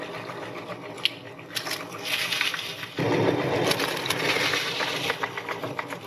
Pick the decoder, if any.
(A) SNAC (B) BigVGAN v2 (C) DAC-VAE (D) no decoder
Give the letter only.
D